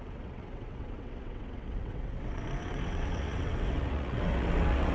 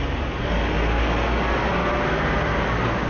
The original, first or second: second